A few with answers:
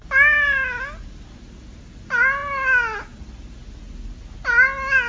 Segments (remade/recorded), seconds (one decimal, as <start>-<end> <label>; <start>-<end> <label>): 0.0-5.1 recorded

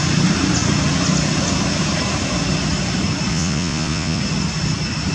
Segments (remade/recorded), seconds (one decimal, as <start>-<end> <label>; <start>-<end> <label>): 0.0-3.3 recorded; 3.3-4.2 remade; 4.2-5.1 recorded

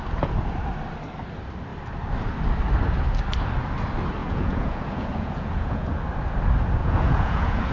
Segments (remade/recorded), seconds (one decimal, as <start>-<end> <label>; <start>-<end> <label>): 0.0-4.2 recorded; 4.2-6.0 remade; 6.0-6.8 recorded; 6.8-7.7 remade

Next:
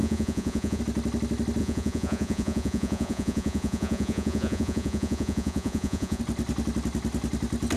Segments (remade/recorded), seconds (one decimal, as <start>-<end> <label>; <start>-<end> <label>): 0.0-0.8 remade; 0.8-1.6 recorded; 1.6-6.2 remade; 6.2-7.8 recorded